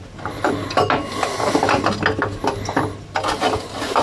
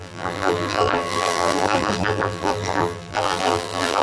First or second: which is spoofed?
second